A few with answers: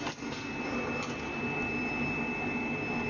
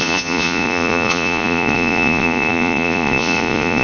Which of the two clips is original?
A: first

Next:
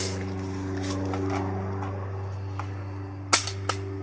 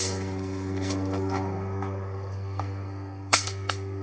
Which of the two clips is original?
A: first